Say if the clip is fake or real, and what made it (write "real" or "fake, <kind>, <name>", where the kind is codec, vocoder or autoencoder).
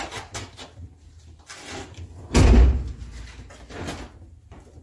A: real